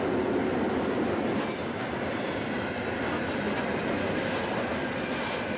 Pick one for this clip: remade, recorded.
recorded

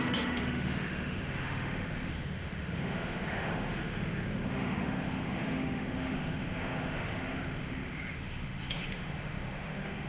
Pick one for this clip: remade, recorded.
remade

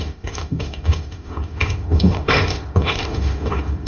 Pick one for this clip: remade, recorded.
remade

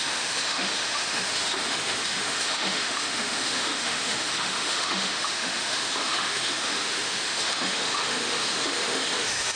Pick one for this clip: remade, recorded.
remade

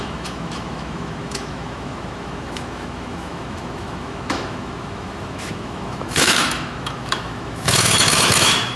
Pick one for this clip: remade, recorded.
remade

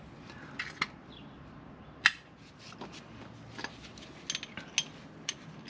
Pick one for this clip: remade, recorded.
recorded